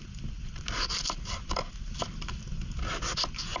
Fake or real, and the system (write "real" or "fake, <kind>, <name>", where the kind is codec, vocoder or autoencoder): real